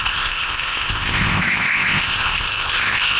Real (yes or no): no